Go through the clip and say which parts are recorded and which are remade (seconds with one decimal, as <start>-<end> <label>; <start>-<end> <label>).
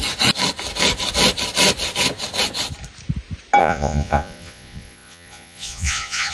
0.0-3.6 recorded; 3.6-6.3 remade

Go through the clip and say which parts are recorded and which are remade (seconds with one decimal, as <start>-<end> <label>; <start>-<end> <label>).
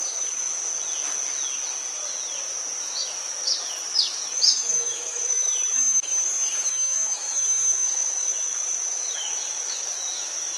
0.0-0.7 remade; 0.7-2.8 recorded; 2.8-6.1 remade; 6.1-6.7 recorded; 6.7-10.6 remade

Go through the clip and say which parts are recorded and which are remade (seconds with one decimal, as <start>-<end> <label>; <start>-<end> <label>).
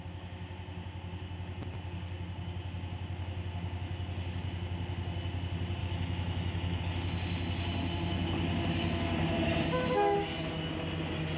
0.0-5.8 recorded; 5.8-6.8 remade; 6.8-11.4 recorded